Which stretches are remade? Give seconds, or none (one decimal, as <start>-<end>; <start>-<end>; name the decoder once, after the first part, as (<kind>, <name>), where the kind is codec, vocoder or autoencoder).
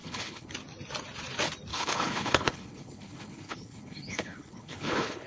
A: 0.0-0.5 (codec, HILCodec); 1.7-5.3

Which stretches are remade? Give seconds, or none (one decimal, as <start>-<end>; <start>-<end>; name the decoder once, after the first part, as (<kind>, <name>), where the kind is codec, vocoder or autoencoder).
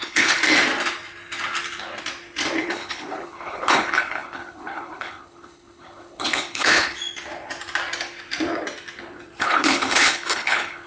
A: 0.0-0.4 (codec, HILCodec); 2.6-7.0; 9.4-10.9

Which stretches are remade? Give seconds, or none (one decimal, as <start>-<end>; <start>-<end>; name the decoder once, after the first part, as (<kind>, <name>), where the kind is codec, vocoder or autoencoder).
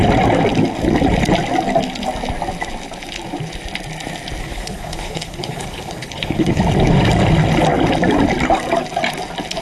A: 4.4-6.6 (codec, HILCodec)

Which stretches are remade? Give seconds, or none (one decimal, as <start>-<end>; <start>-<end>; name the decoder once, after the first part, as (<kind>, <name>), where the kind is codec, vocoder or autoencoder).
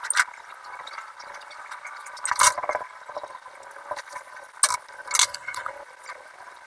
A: 5.2-5.7 (codec, HILCodec)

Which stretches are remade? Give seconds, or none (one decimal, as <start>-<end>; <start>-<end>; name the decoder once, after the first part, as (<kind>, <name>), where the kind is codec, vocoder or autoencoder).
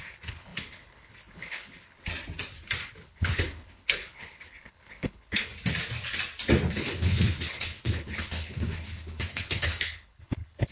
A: 0.0-2.1 (codec, HILCodec); 2.8-5.5; 6.7-10.7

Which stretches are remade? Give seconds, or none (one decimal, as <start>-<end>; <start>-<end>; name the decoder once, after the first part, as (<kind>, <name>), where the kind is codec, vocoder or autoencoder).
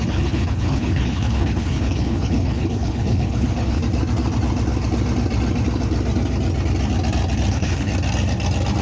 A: 0.0-3.8 (codec, HILCodec); 7.5-7.9